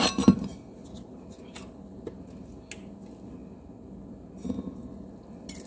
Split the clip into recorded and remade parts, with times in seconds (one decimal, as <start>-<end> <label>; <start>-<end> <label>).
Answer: 0.0-5.7 recorded